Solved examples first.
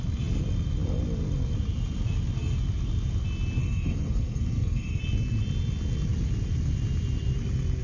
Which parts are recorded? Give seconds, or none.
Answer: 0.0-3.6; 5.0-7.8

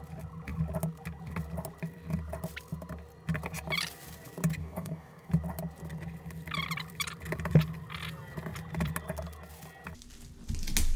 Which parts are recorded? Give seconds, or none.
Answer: 0.0-4.6; 5.3-11.0